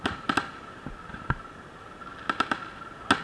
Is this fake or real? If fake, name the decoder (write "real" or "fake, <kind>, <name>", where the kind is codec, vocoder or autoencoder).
real